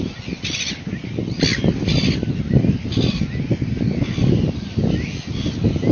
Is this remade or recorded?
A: recorded